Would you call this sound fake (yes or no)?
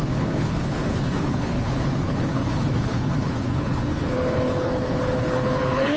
yes